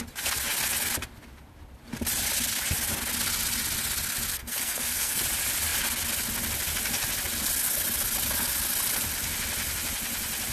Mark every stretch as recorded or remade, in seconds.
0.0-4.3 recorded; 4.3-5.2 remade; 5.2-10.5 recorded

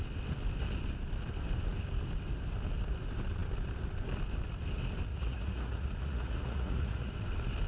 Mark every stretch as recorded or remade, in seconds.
0.0-5.1 recorded; 5.1-7.1 remade; 7.1-7.7 recorded

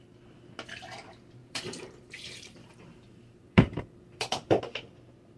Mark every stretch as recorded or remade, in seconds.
0.0-1.4 recorded; 1.4-4.6 remade; 4.6-5.4 recorded

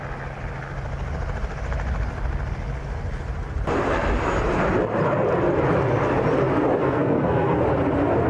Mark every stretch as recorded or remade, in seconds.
0.0-6.8 recorded; 6.8-7.6 remade; 7.6-8.3 recorded

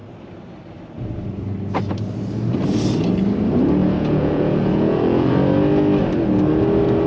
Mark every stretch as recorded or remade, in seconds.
0.0-3.8 recorded; 3.8-5.3 remade; 5.3-7.1 recorded